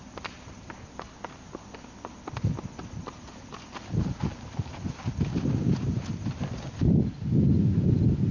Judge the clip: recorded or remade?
recorded